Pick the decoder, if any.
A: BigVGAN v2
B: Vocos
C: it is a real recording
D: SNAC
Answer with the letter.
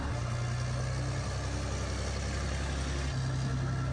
C